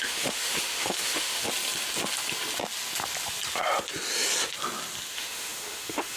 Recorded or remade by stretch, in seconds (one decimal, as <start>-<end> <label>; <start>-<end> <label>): 0.0-1.4 remade; 1.4-5.1 recorded; 5.1-6.2 remade